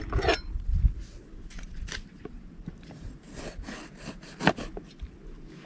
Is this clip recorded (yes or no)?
yes